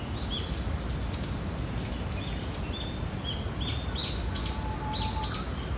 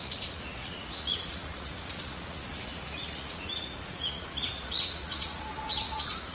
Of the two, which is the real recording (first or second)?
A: first